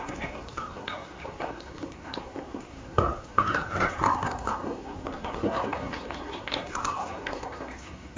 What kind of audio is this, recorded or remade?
remade